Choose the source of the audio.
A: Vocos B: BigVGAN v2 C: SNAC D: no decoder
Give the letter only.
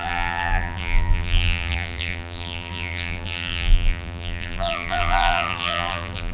B